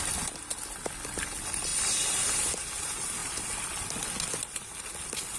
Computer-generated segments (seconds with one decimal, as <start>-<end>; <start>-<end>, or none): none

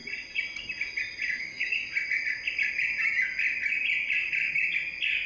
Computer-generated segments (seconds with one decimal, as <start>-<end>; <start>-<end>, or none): 1.4-1.8

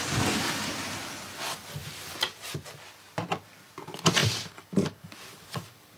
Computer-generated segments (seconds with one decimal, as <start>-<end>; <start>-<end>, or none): 1.8-2.5

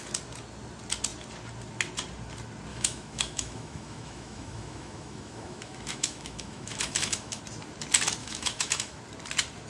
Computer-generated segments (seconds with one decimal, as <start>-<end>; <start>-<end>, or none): 2.7-7.4; 8.2-9.0

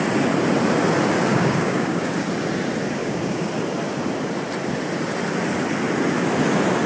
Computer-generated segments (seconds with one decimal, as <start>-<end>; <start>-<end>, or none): 1.3-2.1; 3.0-3.5

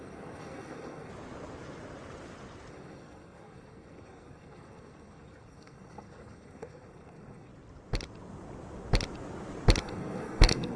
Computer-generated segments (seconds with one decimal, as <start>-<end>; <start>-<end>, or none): 0.0-1.1; 2.7-7.5; 9.8-10.8

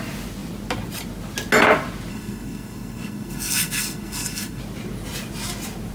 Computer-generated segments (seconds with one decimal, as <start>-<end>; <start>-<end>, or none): 2.1-4.6